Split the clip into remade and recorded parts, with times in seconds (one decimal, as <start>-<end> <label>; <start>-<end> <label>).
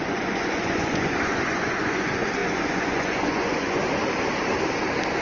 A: 0.0-3.8 remade; 3.8-5.2 recorded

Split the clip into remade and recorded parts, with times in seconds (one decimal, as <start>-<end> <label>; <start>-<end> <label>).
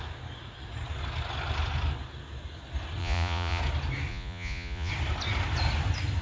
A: 0.0-3.0 recorded; 3.0-3.6 remade; 3.6-4.1 recorded; 4.1-4.9 remade; 4.9-6.2 recorded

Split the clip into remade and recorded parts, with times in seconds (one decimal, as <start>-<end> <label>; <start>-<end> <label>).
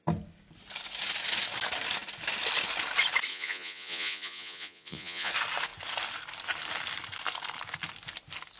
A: 0.0-3.3 recorded; 3.3-5.3 remade; 5.3-8.6 recorded